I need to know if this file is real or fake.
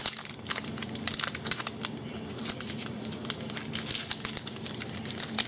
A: real